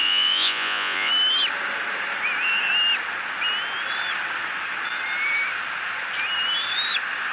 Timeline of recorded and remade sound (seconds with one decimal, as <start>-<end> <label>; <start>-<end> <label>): 0.0-1.1 remade; 1.1-7.3 recorded